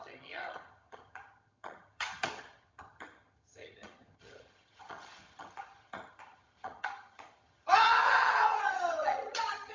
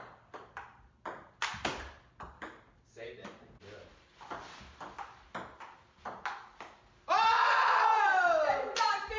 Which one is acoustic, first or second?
second